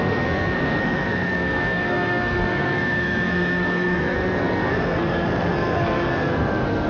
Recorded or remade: remade